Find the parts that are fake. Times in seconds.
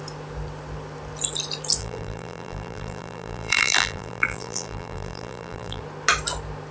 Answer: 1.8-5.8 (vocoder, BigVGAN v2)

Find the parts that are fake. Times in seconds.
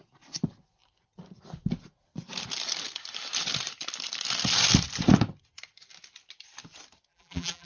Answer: 7.1-7.7 (vocoder, BigVGAN v2)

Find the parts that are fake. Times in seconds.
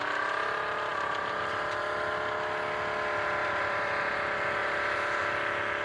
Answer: 3.4-4.1 (vocoder, BigVGAN v2); 4.6-5.2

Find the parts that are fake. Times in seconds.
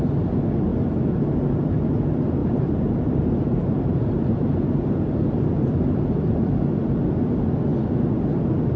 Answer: 2.4-7.0 (vocoder, BigVGAN v2)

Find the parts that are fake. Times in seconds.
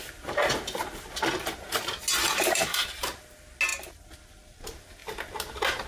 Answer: 2.2-3.1 (vocoder, BigVGAN v2)